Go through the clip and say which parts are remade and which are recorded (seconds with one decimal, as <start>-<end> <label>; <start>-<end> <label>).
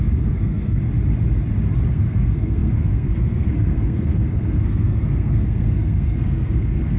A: 0.0-0.8 remade; 0.8-1.9 recorded; 1.9-7.0 remade